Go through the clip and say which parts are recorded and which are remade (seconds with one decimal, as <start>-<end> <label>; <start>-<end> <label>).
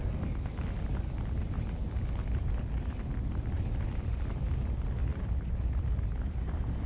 0.0-6.9 recorded